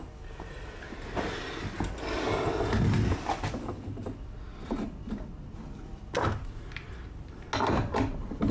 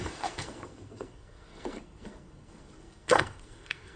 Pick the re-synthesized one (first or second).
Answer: second